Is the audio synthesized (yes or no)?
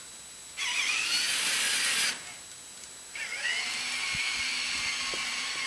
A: no